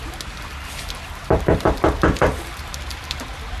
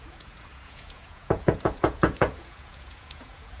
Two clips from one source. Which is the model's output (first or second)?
second